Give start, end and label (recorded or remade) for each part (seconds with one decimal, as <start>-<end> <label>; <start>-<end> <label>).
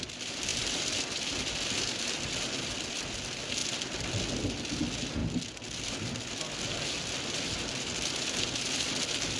0.0-0.5 recorded; 0.5-3.0 remade; 3.0-3.6 recorded; 3.6-4.2 remade; 4.2-9.4 recorded